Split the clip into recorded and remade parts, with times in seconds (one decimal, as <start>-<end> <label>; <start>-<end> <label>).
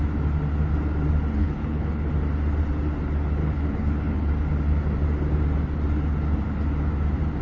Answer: 0.0-1.4 recorded; 1.4-2.1 remade; 2.1-3.4 recorded; 3.4-4.3 remade; 4.3-7.4 recorded